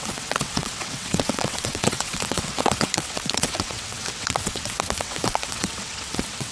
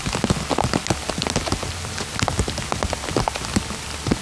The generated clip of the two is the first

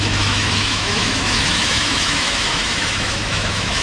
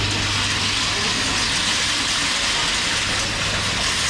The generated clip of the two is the first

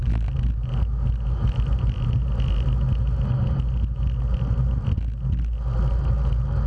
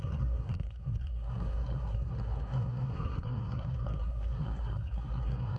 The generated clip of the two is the second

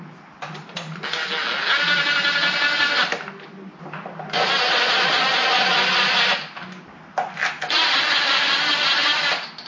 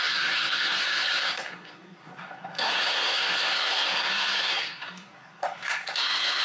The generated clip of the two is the second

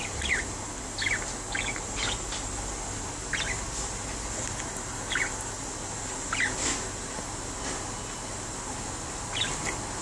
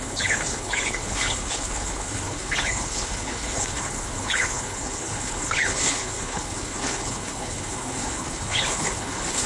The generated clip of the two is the second